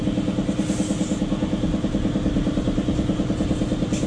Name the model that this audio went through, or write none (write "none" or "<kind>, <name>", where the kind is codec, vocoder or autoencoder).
none